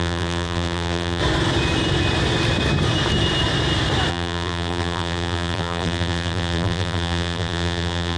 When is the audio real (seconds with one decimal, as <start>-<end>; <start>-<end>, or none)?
1.2-4.1